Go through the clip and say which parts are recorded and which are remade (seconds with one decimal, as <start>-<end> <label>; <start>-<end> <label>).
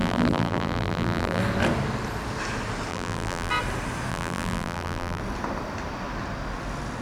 0.0-1.4 remade; 1.4-2.9 recorded; 2.9-3.5 remade; 3.5-4.1 recorded; 4.1-5.2 remade; 5.2-7.0 recorded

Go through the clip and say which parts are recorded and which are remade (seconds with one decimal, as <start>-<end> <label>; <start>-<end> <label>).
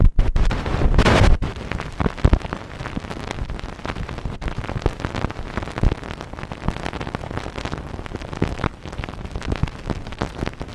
0.0-2.8 remade; 2.8-3.8 recorded; 3.8-10.7 remade